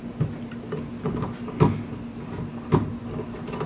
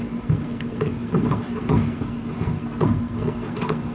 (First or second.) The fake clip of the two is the second